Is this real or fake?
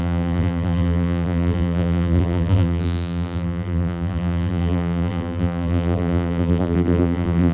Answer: fake